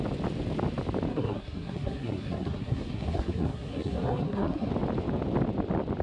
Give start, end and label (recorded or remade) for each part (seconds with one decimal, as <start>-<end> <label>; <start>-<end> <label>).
0.0-1.1 recorded; 1.1-4.7 remade; 4.7-6.0 recorded